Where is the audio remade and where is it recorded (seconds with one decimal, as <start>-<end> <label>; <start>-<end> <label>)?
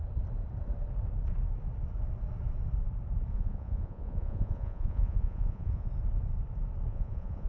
0.0-3.3 recorded; 3.3-5.9 remade; 5.9-6.9 recorded; 6.9-7.5 remade